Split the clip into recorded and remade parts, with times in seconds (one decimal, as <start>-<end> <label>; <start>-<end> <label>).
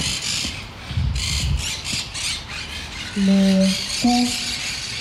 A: 0.0-2.1 remade; 2.1-4.3 recorded; 4.3-5.0 remade